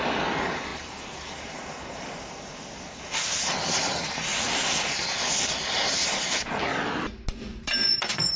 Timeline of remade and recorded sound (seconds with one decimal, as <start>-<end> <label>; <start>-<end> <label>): 0.0-0.7 recorded; 0.7-2.5 remade; 2.5-4.3 recorded; 4.3-4.9 remade; 4.9-6.0 recorded; 6.0-6.6 remade; 6.6-7.5 recorded; 7.5-8.4 remade